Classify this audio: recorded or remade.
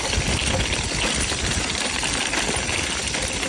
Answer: recorded